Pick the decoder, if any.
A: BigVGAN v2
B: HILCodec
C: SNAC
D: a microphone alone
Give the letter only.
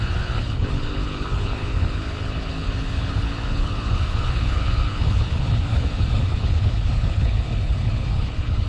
B